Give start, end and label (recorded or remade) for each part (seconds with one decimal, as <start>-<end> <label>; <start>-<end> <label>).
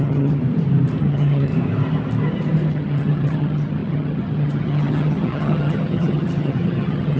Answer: 0.0-0.4 remade; 0.4-1.0 recorded; 1.0-1.5 remade; 1.5-2.7 recorded; 2.7-7.2 remade